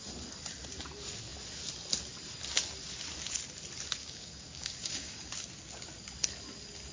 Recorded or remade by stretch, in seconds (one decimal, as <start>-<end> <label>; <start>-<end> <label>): 0.0-4.0 recorded; 4.0-5.3 remade; 5.3-6.9 recorded